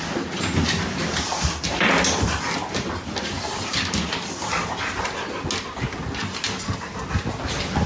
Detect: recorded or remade recorded